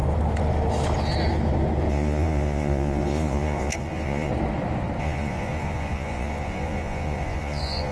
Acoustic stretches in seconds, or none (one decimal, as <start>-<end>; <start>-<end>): 0.0-1.9; 4.3-5.0